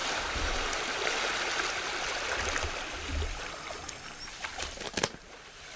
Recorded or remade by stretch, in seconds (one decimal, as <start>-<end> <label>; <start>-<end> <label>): 0.0-5.8 recorded